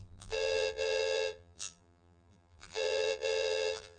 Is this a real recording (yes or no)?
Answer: no